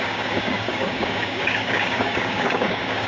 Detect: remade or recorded remade